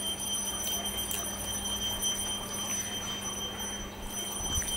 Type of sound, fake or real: real